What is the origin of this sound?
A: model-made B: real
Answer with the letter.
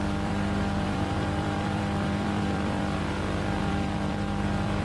A